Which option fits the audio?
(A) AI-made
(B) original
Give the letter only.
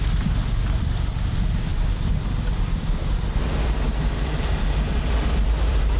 B